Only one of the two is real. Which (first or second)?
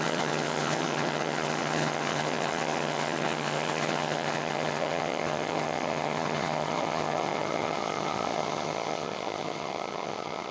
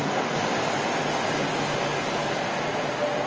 second